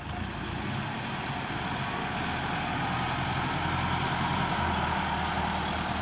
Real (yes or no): yes